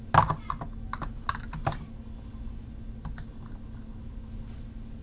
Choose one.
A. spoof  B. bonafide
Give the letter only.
B